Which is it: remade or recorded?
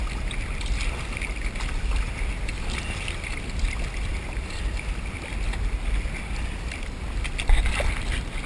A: recorded